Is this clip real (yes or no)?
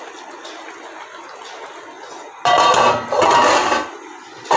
yes